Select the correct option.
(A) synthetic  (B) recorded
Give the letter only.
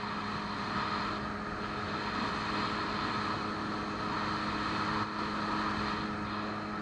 B